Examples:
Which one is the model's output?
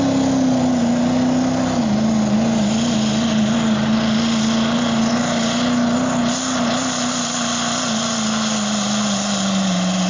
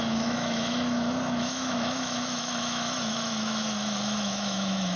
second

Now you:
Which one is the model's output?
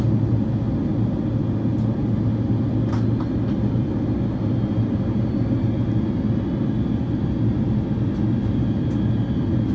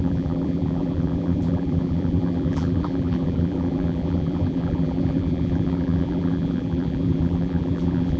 second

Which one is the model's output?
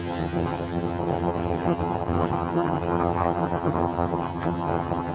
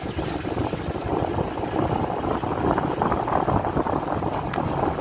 first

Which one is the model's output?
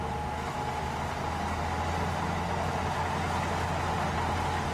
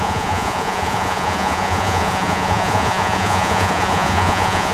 second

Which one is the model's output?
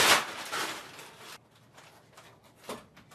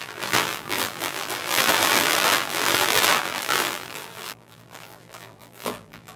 second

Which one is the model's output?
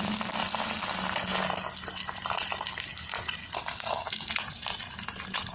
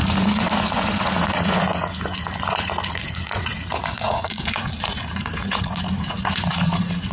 second